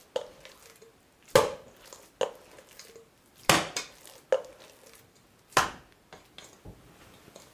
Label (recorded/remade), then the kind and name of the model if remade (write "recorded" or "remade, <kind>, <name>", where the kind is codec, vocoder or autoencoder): recorded